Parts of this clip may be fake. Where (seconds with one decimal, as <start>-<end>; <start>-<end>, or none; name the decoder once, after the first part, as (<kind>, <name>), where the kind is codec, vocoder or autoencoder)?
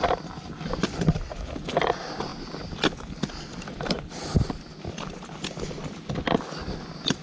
none